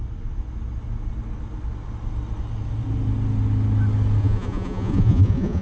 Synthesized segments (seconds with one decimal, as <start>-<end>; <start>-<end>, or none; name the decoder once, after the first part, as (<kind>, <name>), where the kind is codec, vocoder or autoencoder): 4.2-5.6 (vocoder, Vocos)